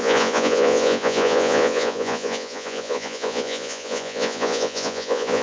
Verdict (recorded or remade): remade